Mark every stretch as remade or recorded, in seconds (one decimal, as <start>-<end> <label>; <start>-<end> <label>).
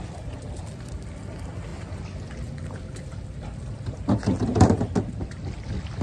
0.0-6.0 recorded